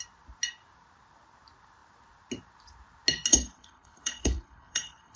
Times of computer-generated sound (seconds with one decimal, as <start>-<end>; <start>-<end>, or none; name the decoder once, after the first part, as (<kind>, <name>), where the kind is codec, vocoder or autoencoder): 3.3-5.2 (codec, HILCodec)